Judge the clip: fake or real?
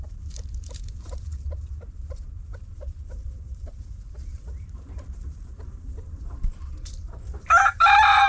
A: fake